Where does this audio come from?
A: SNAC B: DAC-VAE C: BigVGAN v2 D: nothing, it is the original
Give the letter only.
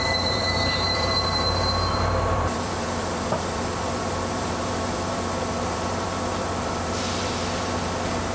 C